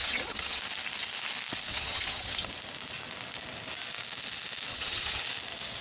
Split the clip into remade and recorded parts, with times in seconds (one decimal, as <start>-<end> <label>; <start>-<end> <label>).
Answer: 0.0-0.6 remade; 0.6-1.7 recorded; 1.7-2.5 remade; 2.5-4.7 recorded; 4.7-5.2 remade; 5.2-5.8 recorded